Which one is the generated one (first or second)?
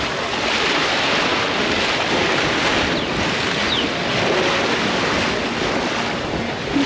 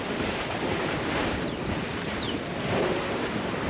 second